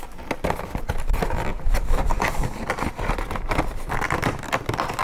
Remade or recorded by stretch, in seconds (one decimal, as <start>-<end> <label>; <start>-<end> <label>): 0.0-5.0 recorded